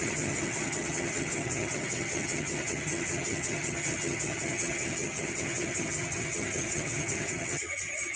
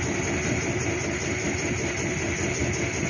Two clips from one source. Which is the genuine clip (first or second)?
second